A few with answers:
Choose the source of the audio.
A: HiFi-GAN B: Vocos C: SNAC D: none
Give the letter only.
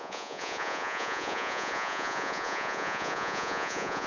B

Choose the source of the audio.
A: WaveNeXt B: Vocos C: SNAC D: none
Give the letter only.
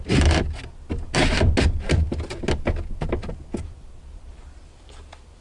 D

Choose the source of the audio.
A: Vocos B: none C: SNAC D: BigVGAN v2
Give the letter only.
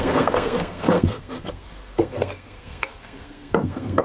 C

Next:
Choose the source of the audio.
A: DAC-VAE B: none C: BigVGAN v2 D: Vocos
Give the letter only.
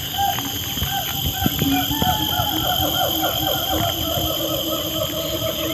B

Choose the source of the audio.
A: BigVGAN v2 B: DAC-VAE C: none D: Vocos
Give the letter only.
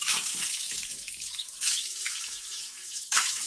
B